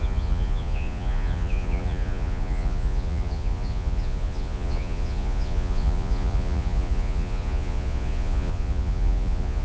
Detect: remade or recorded remade